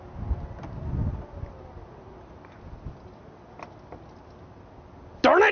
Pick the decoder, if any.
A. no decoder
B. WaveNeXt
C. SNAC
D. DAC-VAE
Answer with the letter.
A